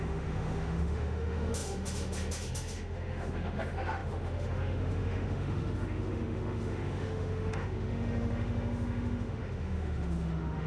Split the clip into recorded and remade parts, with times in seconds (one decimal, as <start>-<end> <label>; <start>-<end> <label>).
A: 0.0-10.7 remade